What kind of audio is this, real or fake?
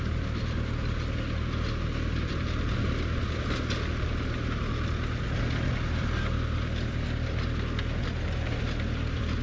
real